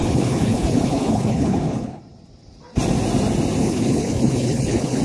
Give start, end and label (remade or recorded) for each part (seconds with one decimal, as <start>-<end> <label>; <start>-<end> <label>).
0.0-2.0 remade; 2.0-3.6 recorded; 3.6-5.0 remade